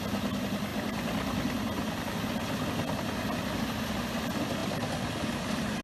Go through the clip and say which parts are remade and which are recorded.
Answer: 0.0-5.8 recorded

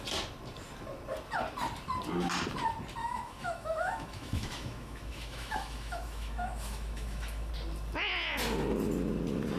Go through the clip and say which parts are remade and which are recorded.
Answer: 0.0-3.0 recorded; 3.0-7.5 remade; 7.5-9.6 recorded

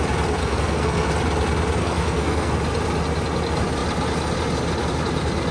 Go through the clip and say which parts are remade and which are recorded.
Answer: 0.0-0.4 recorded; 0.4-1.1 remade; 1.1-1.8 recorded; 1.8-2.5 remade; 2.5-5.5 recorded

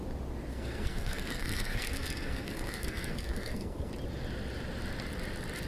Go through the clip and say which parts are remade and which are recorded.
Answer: 0.0-0.5 recorded; 0.5-3.9 remade; 3.9-5.7 recorded

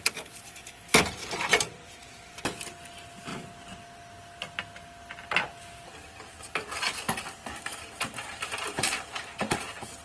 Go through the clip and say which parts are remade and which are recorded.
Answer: 0.0-1.2 recorded; 1.2-2.3 remade; 2.3-8.3 recorded; 8.3-9.4 remade; 9.4-10.0 recorded